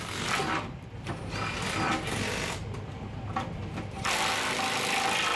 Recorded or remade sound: recorded